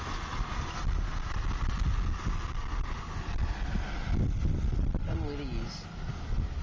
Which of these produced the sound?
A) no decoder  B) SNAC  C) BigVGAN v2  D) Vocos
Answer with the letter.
A